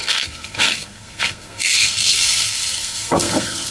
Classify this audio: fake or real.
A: fake